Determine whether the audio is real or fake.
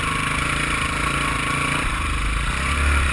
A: real